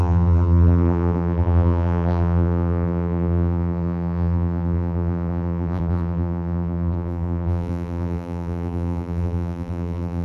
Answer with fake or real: fake